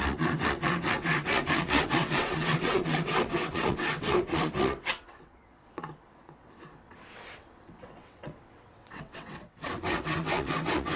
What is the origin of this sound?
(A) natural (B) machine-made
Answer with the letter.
B